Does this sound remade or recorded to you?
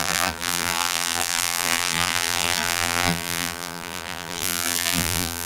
remade